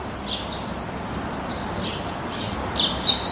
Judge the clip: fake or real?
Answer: real